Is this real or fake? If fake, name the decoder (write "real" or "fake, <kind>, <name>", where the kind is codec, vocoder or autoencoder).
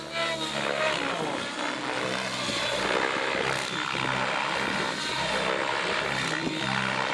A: real